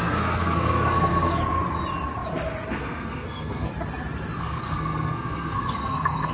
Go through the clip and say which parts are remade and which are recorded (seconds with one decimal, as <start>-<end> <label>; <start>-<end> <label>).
0.0-1.4 remade; 1.4-2.7 recorded; 2.7-3.7 remade; 3.7-4.4 recorded; 4.4-6.3 remade